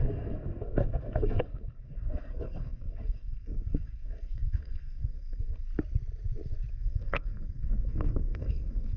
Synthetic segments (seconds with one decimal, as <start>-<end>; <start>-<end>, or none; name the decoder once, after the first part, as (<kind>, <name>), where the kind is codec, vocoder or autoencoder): 0.0-5.7 (codec, SNAC); 6.7-9.0